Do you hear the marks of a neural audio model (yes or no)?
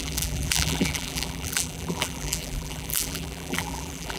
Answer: yes